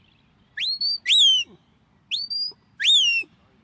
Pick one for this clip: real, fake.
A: real